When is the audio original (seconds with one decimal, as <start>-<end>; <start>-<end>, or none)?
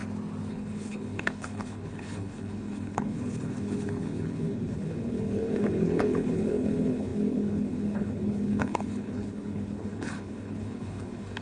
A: 0.0-0.5